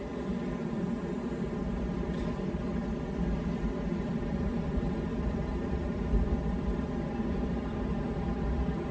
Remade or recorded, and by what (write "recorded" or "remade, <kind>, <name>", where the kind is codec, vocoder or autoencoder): remade, vocoder, BigVGAN v2